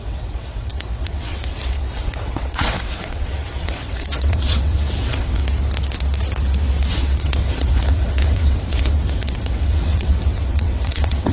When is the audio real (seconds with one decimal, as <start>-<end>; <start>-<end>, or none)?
5.4-6.9